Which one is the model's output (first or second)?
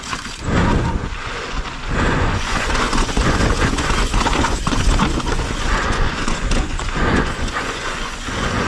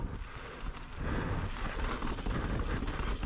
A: first